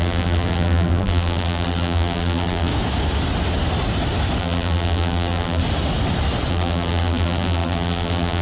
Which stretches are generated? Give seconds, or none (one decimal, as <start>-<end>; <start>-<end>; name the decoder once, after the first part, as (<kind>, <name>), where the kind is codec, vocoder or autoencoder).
0.0-2.7 (vocoder, BigVGAN v2); 4.4-5.6; 6.5-8.4